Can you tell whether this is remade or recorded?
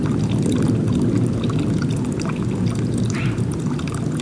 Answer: recorded